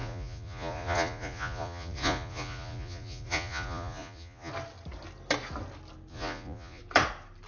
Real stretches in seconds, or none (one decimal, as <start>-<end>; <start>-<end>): 4.5-6.1; 6.8-7.5